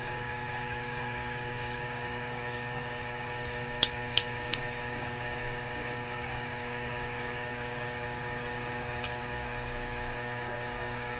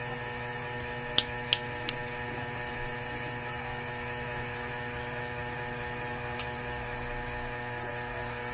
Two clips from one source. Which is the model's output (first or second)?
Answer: first